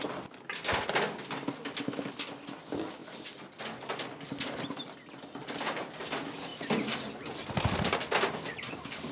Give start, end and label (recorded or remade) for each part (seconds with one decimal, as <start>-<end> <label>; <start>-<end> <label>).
0.0-9.1 recorded